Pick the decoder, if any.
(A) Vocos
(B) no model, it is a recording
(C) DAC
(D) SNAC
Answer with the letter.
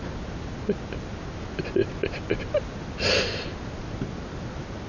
B